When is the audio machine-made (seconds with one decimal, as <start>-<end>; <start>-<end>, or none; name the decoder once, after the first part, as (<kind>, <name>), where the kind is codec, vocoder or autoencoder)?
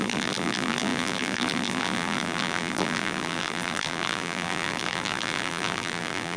0.0-6.4 (vocoder, BigVGAN v2)